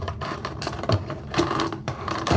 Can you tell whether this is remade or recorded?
remade